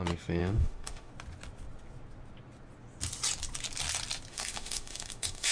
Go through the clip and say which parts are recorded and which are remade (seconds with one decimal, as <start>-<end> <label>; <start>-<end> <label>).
0.0-0.4 recorded; 0.4-1.1 remade; 1.1-4.3 recorded; 4.3-5.5 remade